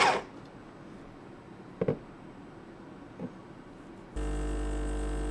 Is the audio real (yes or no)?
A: yes